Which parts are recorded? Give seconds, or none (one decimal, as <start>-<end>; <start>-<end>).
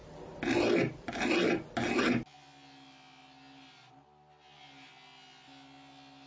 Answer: 0.0-6.3